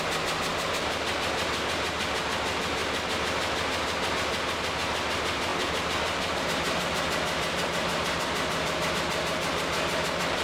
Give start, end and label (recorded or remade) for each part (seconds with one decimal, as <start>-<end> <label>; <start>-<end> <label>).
0.0-10.4 recorded

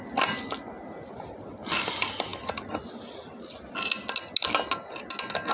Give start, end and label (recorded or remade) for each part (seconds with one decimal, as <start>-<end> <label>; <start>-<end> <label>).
0.0-5.5 recorded

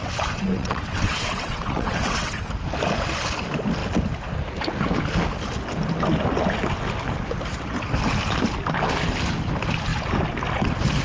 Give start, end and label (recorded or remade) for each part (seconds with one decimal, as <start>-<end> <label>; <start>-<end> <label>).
0.0-2.5 remade; 2.5-11.0 recorded

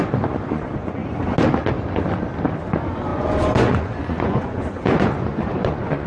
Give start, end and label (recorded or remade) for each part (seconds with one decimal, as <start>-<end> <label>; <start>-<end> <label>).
0.0-1.0 remade; 1.0-2.6 recorded; 2.6-6.1 remade

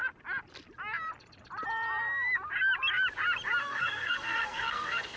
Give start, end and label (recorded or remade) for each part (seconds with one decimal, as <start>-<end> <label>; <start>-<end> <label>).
0.0-3.6 recorded; 3.6-5.2 remade

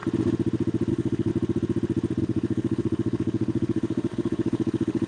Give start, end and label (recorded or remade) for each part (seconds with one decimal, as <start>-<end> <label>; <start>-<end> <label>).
0.0-0.9 recorded; 0.9-1.3 remade; 1.3-2.2 recorded; 2.2-5.1 remade